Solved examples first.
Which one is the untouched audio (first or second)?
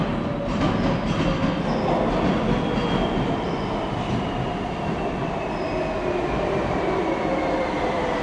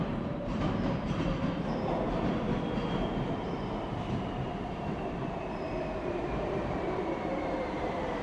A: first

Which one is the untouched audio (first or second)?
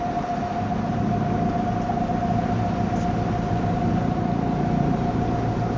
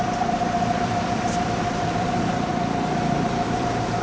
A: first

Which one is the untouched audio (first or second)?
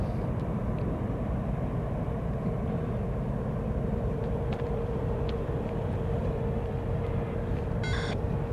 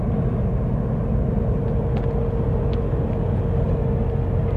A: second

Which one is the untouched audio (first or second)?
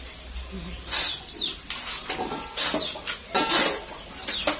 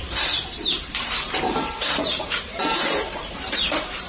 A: first